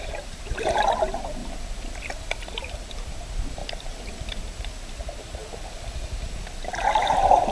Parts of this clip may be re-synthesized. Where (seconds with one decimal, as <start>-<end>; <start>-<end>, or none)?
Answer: 0.0-1.4; 2.4-5.4; 6.7-7.5